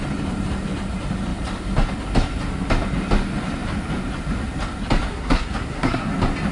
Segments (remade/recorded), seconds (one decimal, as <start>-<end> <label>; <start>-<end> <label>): 0.0-5.1 recorded; 5.1-6.1 remade; 6.1-6.5 recorded